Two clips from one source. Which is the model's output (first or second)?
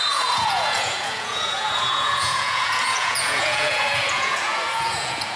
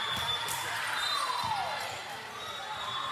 first